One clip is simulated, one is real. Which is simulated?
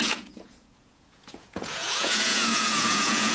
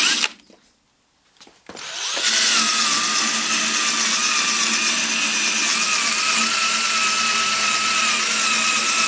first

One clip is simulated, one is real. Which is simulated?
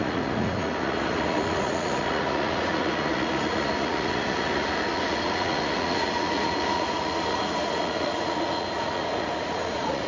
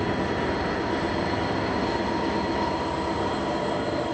first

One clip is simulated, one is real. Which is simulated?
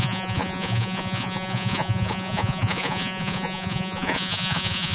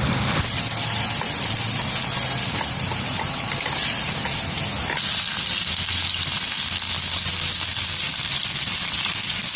first